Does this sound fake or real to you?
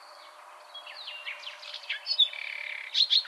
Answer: real